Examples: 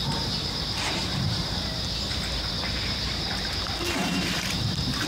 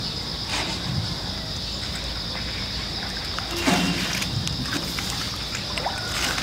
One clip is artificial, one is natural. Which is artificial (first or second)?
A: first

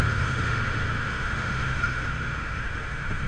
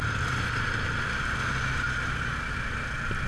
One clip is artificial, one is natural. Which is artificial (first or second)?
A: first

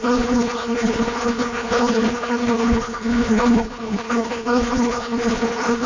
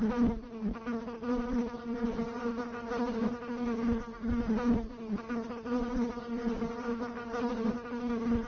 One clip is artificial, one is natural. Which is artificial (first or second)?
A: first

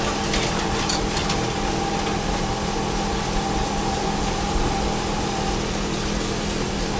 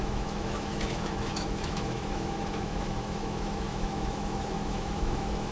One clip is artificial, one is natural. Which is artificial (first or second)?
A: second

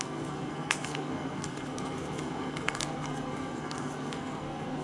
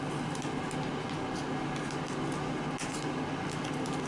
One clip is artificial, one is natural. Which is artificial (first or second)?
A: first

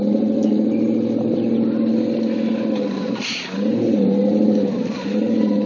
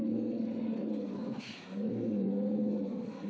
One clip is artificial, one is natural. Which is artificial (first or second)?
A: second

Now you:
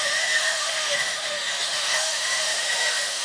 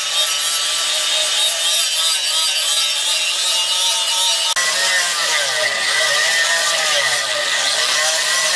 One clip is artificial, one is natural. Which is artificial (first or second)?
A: first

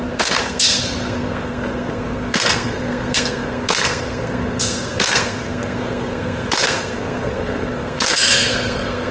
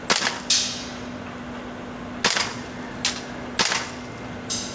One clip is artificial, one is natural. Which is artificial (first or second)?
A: first